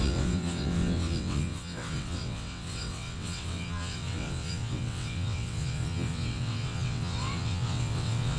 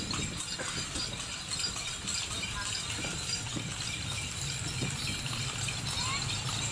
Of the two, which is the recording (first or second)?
second